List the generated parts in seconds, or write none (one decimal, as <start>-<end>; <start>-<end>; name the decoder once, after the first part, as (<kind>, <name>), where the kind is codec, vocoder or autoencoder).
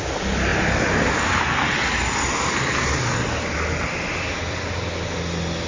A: none